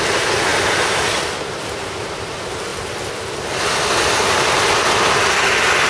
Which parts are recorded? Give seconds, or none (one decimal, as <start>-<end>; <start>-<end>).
0.0-5.9